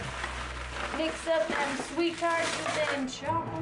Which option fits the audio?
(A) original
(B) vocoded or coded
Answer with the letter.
A